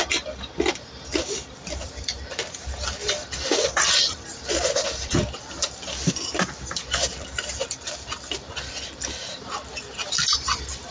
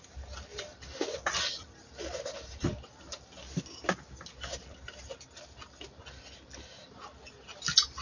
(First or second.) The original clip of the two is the second